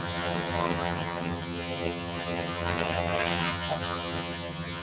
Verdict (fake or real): fake